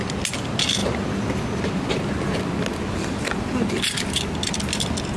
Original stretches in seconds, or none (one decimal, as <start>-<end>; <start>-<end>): 0.0-5.2